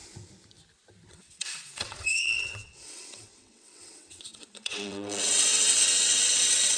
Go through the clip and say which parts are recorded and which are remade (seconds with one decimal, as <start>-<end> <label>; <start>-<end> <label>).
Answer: 0.0-1.1 recorded; 1.1-6.8 remade